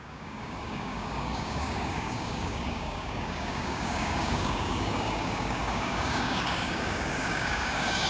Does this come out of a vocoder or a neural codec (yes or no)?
yes